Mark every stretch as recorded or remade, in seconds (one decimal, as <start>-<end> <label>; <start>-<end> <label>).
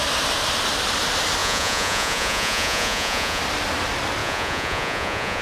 0.0-1.4 recorded; 1.4-3.4 remade; 3.4-4.2 recorded; 4.2-5.4 remade